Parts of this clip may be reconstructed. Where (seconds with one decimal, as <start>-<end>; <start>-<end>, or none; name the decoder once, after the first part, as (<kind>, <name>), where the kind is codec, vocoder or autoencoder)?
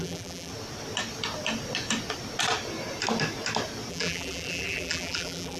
0.0-0.5 (vocoder, BigVGAN v2); 3.9-5.6